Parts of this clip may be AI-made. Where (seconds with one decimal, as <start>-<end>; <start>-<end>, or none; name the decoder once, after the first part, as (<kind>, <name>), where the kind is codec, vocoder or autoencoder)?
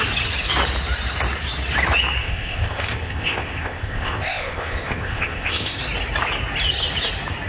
2.2-5.8 (codec, ZipCodec)